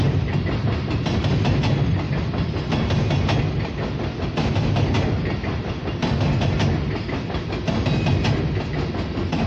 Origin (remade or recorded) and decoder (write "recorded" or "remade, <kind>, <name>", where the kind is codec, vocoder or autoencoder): recorded